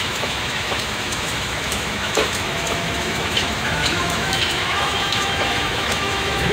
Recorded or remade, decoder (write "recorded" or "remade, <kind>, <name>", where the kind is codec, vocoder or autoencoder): remade, autoencoder, DAC-VAE